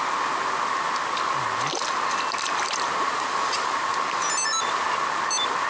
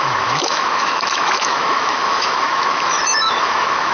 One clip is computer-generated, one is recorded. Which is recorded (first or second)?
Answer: first